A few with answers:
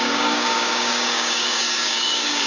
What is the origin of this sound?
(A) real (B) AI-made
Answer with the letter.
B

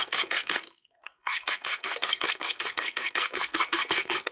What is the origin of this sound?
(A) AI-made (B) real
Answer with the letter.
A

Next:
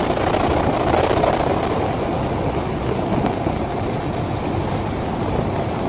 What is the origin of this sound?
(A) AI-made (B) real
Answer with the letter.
B